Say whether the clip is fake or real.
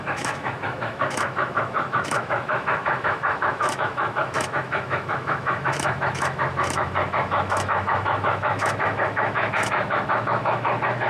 fake